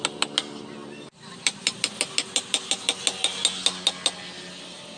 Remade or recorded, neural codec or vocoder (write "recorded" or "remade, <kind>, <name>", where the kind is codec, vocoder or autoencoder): recorded